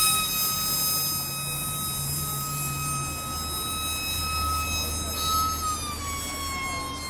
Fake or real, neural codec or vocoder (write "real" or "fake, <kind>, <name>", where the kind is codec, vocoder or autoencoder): real